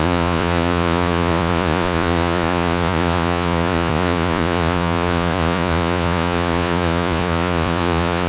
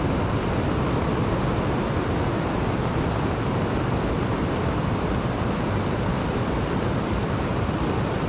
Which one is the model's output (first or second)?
first